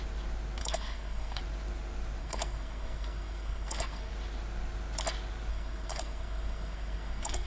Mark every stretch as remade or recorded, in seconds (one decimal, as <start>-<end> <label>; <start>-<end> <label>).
0.0-0.6 recorded; 0.6-1.4 remade; 1.4-2.2 recorded; 2.2-4.1 remade; 4.1-5.5 recorded; 5.5-7.5 remade